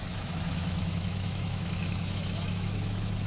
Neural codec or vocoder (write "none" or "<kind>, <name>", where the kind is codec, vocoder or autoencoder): autoencoder, DAC-VAE